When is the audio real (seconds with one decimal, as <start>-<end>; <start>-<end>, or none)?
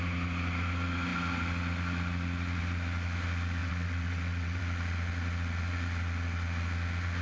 0.0-3.6; 4.6-7.2